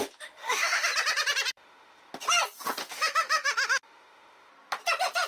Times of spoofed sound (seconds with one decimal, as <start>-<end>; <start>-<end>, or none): 0.0-0.9; 1.5-2.1; 2.9-4.5

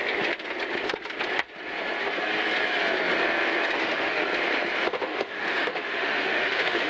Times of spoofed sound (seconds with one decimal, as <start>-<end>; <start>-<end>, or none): 3.8-4.2; 4.9-6.9

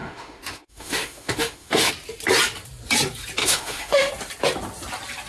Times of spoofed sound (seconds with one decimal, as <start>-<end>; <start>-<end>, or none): 0.0-1.9; 3.4-4.1

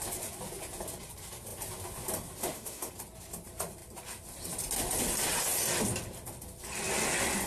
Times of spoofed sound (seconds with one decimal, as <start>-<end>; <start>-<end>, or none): 2.4-2.9